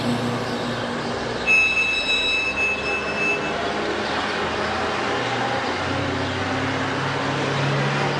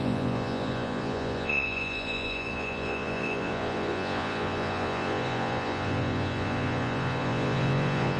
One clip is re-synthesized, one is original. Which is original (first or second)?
first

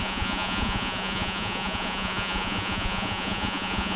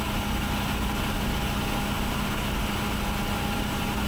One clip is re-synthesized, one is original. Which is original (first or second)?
second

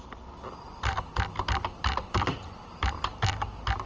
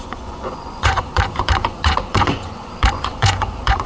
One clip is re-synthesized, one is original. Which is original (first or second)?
first